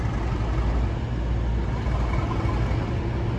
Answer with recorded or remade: recorded